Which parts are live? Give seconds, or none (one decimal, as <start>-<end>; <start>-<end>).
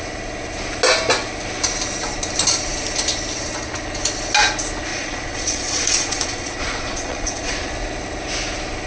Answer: 0.0-4.9; 7.7-8.9